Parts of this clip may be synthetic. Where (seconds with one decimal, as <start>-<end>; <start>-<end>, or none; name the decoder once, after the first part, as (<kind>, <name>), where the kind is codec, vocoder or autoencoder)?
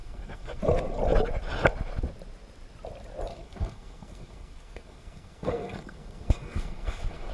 0.0-0.6 (codec, SNAC); 3.3-7.3